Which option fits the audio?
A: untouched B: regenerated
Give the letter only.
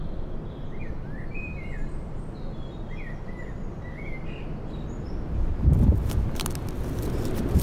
A